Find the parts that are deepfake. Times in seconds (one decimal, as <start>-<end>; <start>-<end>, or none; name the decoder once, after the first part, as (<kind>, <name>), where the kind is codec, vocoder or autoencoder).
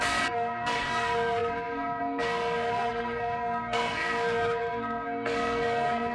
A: 0.0-6.1 (codec, SNAC)